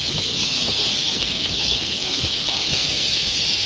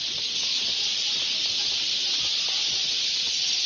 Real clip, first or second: second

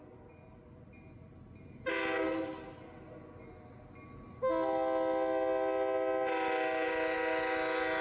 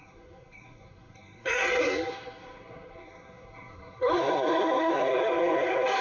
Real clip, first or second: first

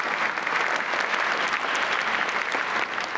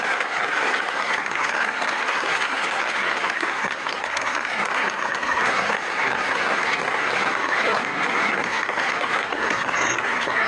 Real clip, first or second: first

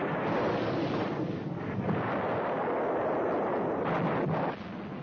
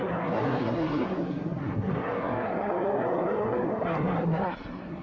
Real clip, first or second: first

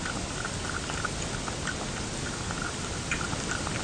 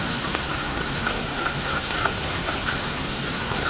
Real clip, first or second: first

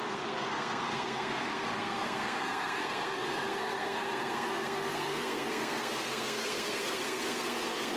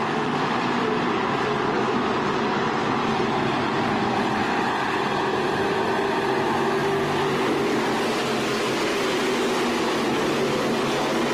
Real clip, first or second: second